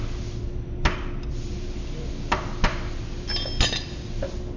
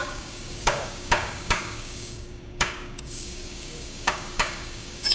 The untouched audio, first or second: first